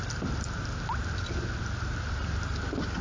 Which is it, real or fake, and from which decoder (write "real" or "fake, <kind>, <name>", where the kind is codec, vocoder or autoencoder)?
real